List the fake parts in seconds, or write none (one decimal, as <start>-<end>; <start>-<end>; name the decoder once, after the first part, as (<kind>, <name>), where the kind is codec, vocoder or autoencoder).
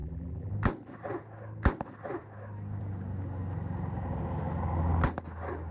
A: 0.0-0.5 (vocoder, BigVGAN v2)